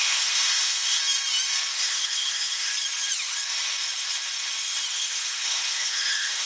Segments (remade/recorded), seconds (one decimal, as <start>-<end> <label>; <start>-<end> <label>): 0.0-1.0 remade; 1.0-1.7 recorded; 1.7-2.7 remade; 2.7-4.9 recorded; 4.9-6.5 remade